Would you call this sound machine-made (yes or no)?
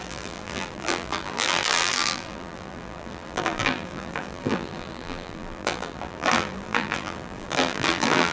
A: yes